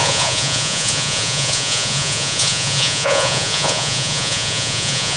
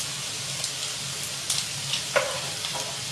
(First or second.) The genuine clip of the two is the second